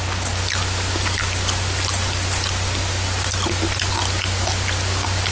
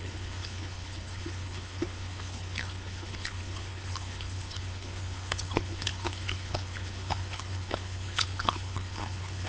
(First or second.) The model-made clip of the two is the second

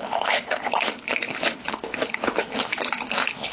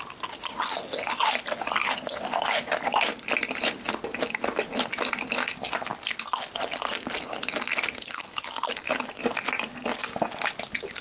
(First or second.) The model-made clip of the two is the first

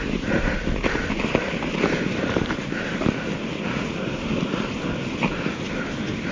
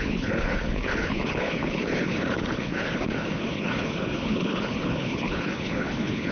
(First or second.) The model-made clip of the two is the second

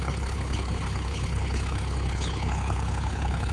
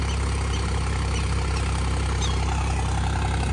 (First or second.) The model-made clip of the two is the first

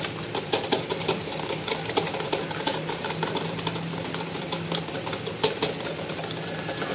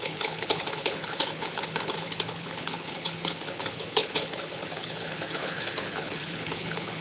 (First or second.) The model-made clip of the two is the second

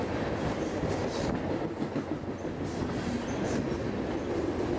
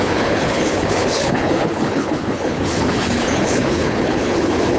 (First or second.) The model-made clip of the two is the second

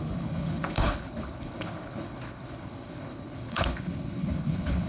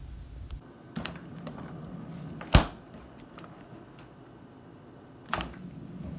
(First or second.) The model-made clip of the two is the first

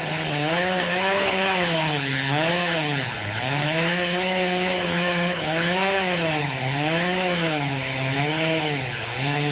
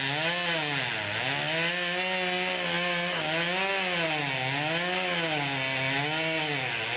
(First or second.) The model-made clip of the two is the first